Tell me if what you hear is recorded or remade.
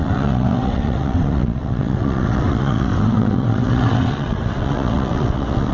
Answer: remade